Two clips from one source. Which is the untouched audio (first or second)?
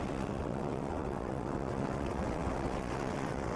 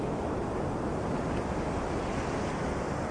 second